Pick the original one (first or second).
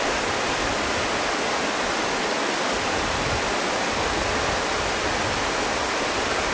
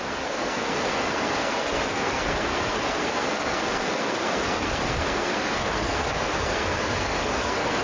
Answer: first